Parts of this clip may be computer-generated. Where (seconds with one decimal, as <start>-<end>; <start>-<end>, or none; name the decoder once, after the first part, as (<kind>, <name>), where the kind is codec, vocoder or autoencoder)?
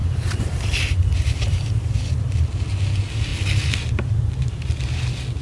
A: 0.0-3.3 (vocoder, BigVGAN v2); 4.4-5.4